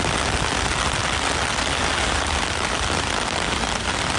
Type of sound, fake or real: real